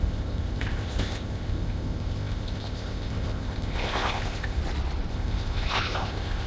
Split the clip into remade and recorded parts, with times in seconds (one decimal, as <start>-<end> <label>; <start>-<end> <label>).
0.0-4.6 remade; 4.6-5.1 recorded; 5.1-6.5 remade